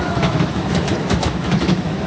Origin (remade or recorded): remade